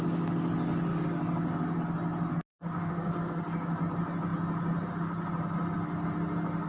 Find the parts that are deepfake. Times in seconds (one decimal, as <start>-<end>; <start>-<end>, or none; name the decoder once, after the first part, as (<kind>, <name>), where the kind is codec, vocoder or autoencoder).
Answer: 0.9-1.8 (codec, DAC); 2.5-3.8

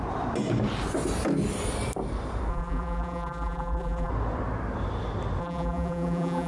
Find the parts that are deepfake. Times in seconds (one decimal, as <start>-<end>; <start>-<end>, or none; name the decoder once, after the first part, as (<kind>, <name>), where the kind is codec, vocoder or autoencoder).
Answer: 2.5-4.1 (vocoder, BigVGAN v2); 5.4-6.5

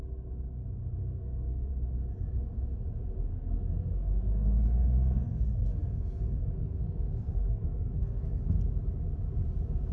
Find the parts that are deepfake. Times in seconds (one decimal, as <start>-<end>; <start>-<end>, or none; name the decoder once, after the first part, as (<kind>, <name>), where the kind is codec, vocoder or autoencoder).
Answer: 1.0-1.7 (codec, SNAC); 3.3-8.4

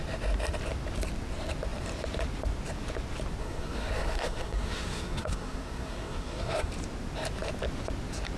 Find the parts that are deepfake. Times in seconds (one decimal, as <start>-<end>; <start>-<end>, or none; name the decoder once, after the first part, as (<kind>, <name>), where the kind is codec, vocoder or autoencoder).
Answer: 3.4-6.7 (codec, SNAC)

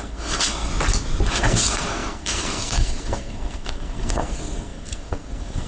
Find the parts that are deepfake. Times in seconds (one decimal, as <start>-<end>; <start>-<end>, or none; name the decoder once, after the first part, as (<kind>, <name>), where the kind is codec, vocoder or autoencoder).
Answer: 0.0-0.7 (codec, SNAC); 1.3-5.7

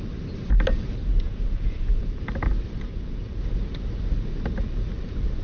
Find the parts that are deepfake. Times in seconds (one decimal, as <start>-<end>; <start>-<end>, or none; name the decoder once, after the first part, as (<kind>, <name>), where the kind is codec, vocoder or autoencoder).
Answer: 1.0-2.2 (vocoder, Vocos); 2.9-3.4

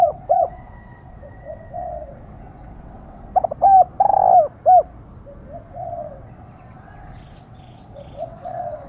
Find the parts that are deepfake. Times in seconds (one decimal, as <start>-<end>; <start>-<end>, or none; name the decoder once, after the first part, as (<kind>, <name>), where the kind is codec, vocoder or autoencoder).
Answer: 0.0-3.3 (vocoder, WaveNeXt); 5.7-8.9

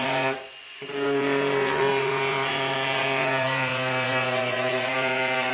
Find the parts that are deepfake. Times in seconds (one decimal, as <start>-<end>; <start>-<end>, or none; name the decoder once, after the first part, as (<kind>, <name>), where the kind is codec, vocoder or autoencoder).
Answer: 0.0-5.5 (vocoder, Vocos)